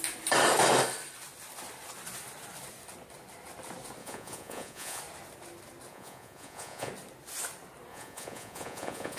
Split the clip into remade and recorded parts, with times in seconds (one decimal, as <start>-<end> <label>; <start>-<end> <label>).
0.0-4.0 recorded; 4.0-5.0 remade; 5.0-5.9 recorded; 5.9-6.9 remade; 6.9-7.9 recorded; 7.9-9.2 remade